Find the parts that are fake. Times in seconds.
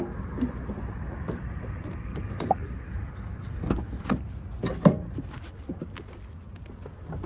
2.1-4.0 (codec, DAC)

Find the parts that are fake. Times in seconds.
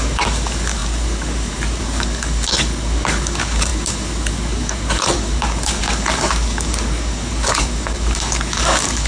0.0-9.1 (codec, DAC)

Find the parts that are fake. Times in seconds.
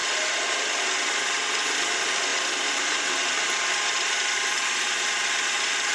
none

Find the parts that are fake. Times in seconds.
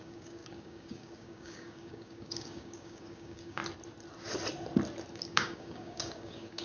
0.0-3.6 (codec, DAC); 5.1-6.6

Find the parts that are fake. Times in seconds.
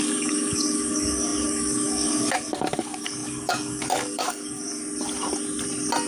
0.0-4.8 (codec, DAC)